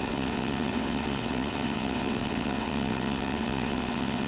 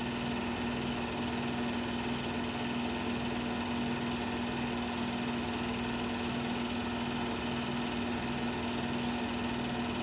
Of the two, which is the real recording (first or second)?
second